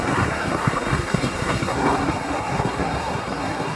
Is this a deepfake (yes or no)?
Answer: yes